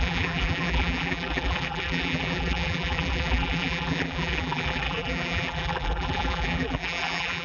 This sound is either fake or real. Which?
fake